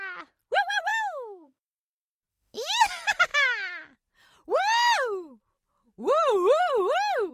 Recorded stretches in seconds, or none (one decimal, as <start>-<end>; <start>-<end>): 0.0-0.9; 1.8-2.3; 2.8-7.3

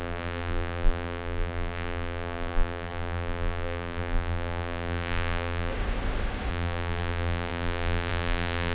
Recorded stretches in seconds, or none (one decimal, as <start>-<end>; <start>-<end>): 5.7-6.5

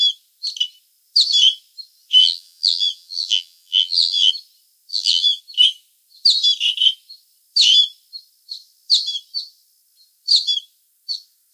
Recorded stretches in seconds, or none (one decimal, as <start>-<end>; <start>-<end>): 0.0-2.2; 4.3-4.9; 5.4-11.5